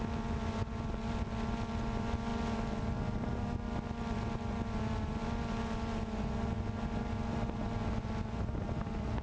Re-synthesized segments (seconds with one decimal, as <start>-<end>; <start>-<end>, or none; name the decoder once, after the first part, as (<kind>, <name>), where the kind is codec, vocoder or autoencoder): none